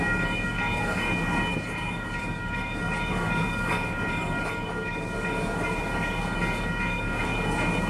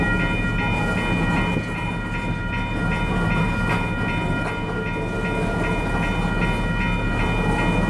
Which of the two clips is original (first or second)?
second